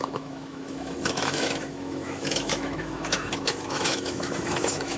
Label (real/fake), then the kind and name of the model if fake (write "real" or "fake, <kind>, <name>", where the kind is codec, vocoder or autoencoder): fake, autoencoder, DAC-VAE